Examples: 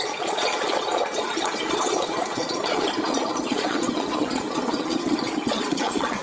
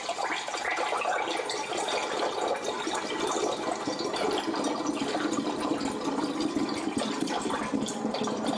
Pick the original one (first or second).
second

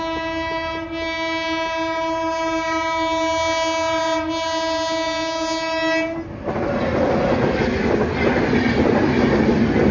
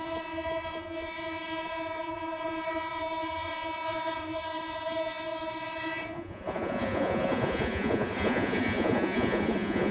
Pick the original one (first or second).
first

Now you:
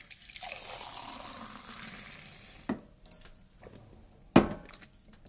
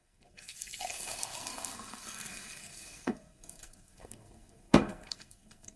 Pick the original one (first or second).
first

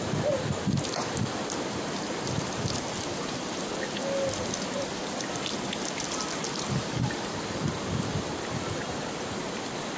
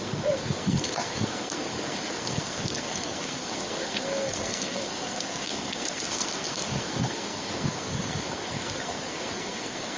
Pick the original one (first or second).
first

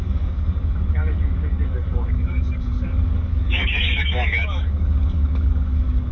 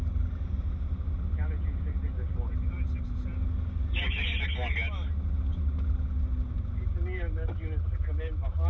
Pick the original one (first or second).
second